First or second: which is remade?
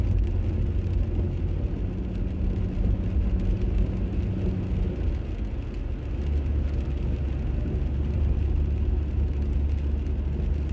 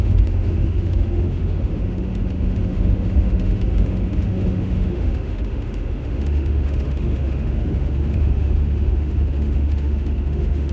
second